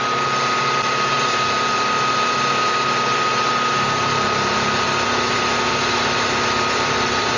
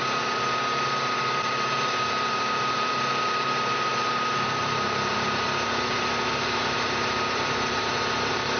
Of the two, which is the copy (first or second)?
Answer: second